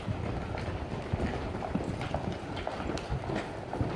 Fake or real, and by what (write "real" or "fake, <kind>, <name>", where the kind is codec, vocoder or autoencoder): real